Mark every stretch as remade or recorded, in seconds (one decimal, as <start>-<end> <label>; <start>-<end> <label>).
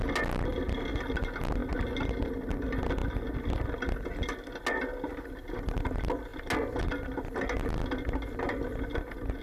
0.0-9.4 recorded